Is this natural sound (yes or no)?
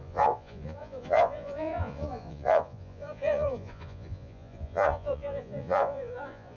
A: no